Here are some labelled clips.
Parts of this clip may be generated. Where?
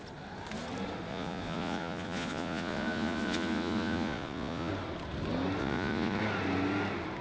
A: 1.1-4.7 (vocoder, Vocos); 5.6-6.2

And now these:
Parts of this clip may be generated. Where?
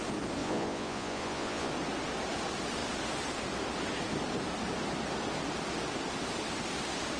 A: 0.4-1.7 (vocoder, Vocos)